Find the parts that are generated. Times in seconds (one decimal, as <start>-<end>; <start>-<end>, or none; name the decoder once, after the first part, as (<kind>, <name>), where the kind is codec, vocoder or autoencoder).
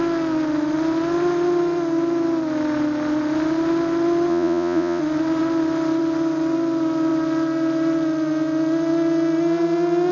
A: 4.3-5.0 (vocoder, Vocos)